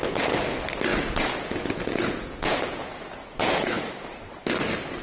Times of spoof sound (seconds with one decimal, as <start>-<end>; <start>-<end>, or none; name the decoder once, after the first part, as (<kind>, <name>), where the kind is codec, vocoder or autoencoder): 0.9-3.9 (vocoder, Vocos)